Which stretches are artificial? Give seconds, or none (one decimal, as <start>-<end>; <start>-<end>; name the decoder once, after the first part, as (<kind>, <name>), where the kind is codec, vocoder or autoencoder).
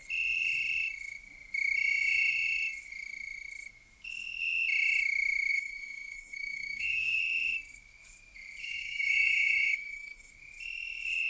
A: 5.5-7.2 (autoencoder, DAC-VAE); 8.6-10.3